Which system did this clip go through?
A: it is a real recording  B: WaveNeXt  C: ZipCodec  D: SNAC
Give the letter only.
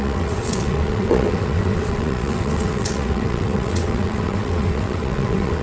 B